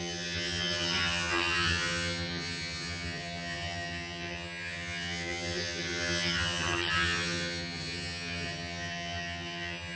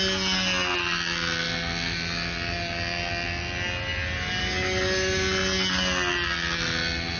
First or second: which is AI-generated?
first